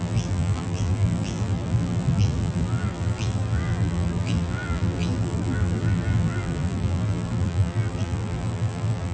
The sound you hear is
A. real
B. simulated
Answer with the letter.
B